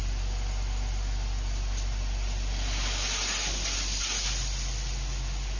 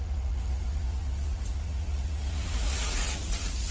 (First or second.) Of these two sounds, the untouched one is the first